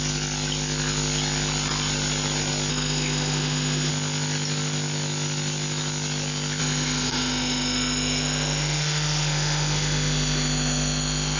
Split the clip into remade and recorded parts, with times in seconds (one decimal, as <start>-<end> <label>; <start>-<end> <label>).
0.0-2.7 recorded; 2.7-3.9 remade; 3.9-6.6 recorded; 6.6-11.4 remade

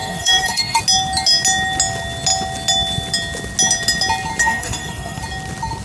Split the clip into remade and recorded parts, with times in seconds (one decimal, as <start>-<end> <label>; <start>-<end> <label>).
0.0-0.8 remade; 0.8-4.4 recorded; 4.4-5.2 remade; 5.2-5.8 recorded